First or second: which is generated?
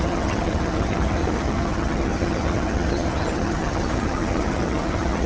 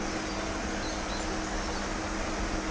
first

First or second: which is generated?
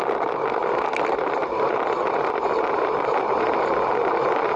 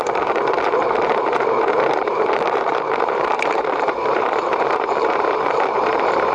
second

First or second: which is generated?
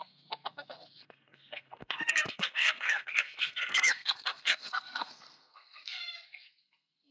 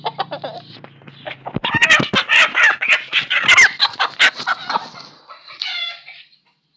first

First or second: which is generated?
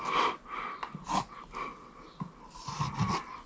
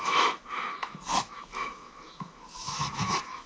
second